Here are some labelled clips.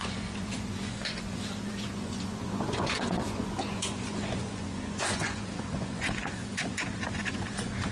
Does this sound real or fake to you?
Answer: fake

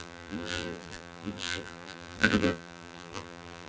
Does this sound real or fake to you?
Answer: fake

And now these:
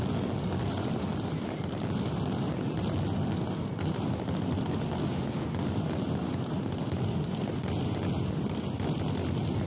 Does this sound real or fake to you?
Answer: real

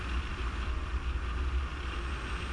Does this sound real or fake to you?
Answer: real